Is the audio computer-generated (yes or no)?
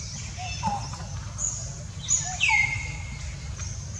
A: no